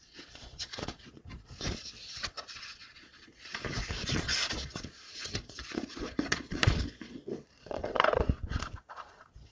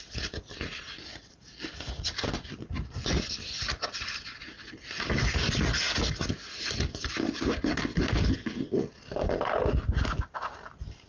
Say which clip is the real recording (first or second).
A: second